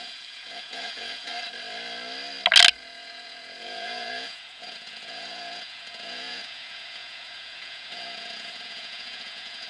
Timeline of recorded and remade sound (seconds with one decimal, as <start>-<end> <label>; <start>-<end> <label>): 0.0-1.3 remade; 1.3-2.8 recorded; 2.8-9.7 remade